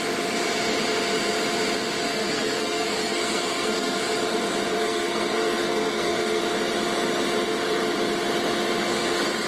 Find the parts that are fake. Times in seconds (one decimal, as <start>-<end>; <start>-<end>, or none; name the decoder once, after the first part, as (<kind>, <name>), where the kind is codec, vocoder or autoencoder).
2.1-4.0 (codec, SNAC); 4.7-6.4